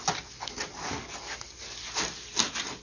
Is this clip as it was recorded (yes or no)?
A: yes